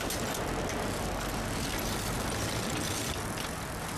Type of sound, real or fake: real